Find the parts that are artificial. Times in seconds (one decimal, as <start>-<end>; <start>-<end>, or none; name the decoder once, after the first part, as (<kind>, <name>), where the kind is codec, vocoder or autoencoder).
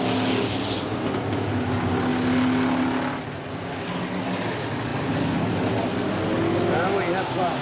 none